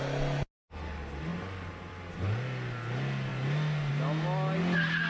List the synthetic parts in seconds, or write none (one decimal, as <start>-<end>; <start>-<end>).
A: 1.3-1.9

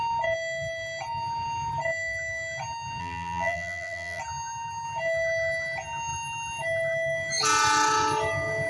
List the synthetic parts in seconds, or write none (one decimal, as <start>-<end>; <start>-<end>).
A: 3.0-4.2

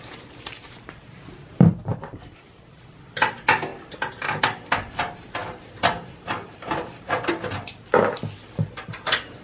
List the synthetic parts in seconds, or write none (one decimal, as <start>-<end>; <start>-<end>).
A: 1.9-2.8; 3.7-4.4; 5.4-7.3

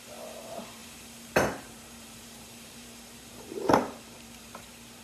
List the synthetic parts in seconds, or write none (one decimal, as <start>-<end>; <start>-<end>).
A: 0.0-5.0

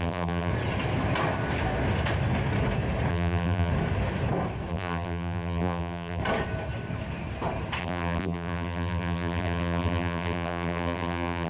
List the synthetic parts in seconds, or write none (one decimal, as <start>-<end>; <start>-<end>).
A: 0.0-0.5; 3.1-3.7; 4.7-6.2; 7.8-11.5

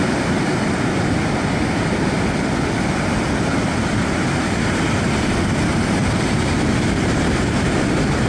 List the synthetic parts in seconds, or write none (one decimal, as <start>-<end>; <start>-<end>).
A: 6.0-7.9

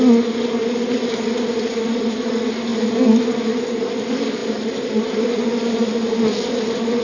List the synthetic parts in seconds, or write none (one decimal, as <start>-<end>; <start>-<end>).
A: 1.7-2.3; 4.4-6.3

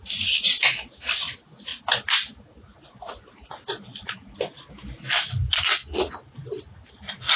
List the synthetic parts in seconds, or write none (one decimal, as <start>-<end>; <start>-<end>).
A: none